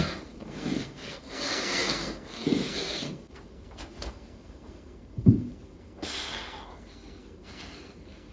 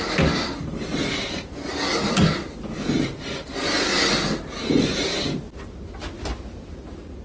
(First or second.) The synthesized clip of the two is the first